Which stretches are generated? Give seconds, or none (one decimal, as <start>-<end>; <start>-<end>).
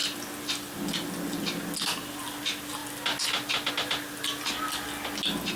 none